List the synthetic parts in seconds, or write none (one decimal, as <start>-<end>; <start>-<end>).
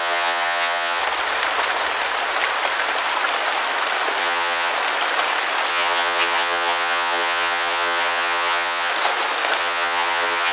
0.0-1.0; 4.2-4.7; 5.7-8.9; 9.6-10.5